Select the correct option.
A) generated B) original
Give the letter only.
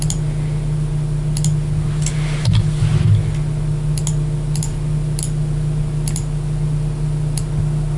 B